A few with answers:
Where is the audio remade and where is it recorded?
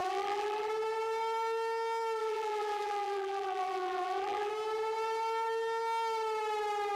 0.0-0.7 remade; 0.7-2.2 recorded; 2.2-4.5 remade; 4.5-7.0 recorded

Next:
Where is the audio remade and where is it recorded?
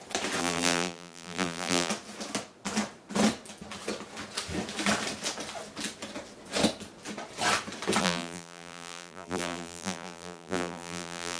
0.0-0.4 recorded; 0.4-1.9 remade; 1.9-8.0 recorded; 8.0-11.4 remade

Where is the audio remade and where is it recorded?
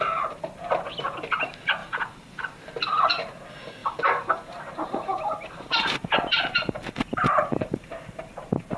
0.0-1.8 recorded; 1.8-2.4 remade; 2.4-3.8 recorded; 3.8-8.0 remade; 8.0-8.8 recorded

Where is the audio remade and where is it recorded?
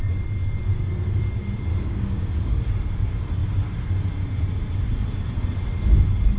0.0-0.7 recorded; 0.7-1.2 remade; 1.2-1.7 recorded; 1.7-2.7 remade; 2.7-6.4 recorded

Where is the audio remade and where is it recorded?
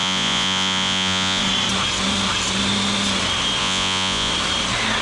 0.0-1.4 remade; 1.4-3.6 recorded; 3.6-4.3 remade; 4.3-5.0 recorded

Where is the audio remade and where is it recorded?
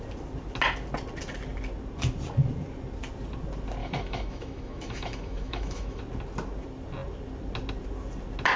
0.0-3.8 recorded; 3.8-6.0 remade; 6.0-8.6 recorded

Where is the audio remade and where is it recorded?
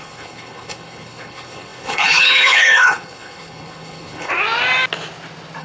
0.0-4.3 remade; 4.3-5.6 recorded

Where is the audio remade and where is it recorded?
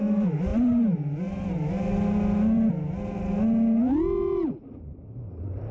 0.0-5.7 recorded